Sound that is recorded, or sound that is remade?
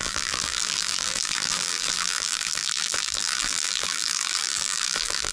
remade